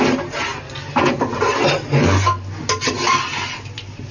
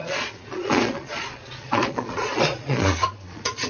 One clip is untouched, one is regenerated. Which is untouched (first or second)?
first